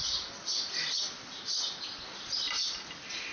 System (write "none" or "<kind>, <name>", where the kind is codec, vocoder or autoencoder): none